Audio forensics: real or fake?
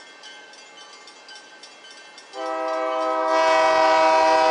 real